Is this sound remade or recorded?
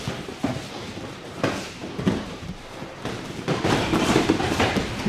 remade